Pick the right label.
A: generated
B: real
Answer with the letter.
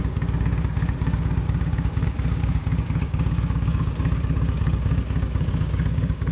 A